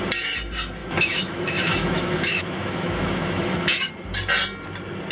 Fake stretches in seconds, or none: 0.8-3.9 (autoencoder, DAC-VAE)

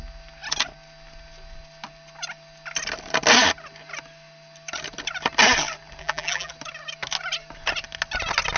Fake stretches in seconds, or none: 6.0-6.5 (vocoder, BigVGAN v2)

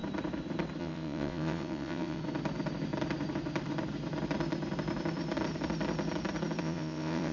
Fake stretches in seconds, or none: 0.8-2.2 (vocoder, WaveNeXt); 6.6-7.3

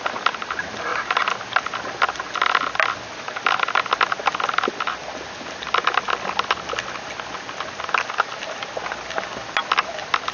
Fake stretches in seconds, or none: none

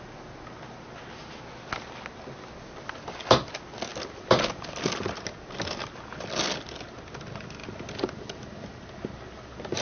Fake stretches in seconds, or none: none

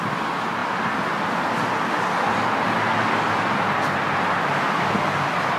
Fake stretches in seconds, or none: none

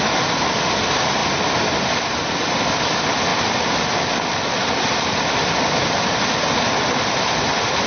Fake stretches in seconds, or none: none

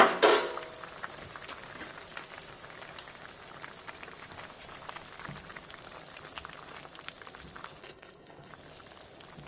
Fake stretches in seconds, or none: 7.8-8.5 (codec, HILCodec)